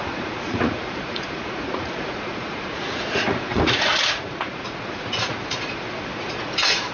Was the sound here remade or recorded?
remade